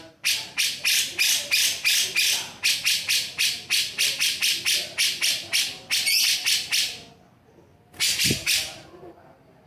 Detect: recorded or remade recorded